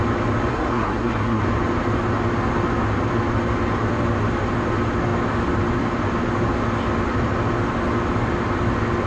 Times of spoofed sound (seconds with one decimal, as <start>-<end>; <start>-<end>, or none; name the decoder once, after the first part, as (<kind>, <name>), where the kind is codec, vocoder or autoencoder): 0.5-1.4 (codec, SNAC)